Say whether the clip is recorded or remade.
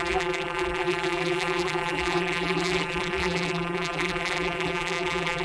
remade